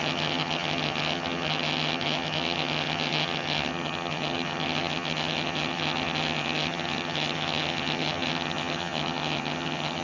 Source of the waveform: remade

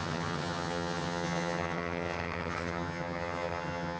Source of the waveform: remade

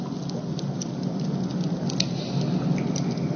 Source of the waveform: recorded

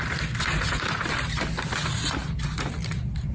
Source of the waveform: recorded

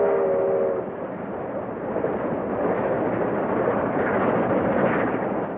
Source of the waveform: recorded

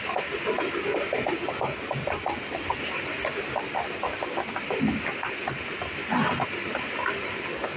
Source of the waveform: recorded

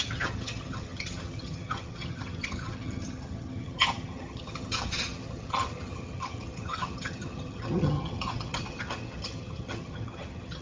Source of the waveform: remade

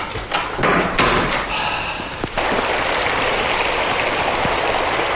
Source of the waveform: recorded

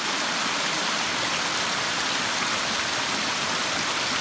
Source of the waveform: recorded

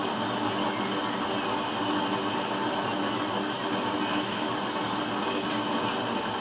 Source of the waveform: recorded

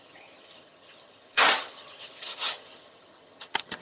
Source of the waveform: remade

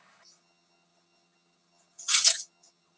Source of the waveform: remade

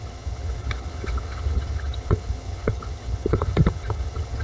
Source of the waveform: remade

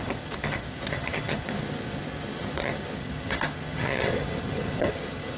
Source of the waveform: remade